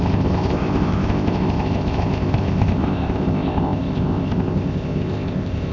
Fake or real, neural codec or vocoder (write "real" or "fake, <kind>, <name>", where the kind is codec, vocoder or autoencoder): fake, codec, ZipCodec